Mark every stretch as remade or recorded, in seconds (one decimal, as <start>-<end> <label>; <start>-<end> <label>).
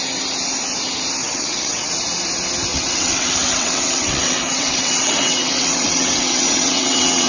0.0-1.2 recorded; 1.2-1.9 remade; 1.9-2.7 recorded; 2.7-7.3 remade